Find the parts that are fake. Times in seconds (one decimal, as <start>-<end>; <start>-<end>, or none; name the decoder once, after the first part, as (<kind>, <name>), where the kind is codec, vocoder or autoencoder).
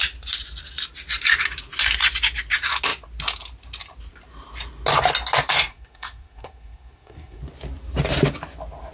5.7-7.4 (codec, SNAC)